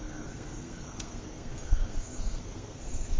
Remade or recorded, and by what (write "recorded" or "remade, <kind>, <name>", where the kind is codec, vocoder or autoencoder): remade, codec, SNAC